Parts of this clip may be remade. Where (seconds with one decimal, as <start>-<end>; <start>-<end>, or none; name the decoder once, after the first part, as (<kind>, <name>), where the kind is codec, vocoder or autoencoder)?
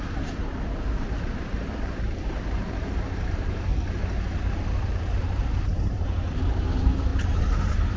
0.0-3.7 (vocoder, BigVGAN v2); 4.9-7.1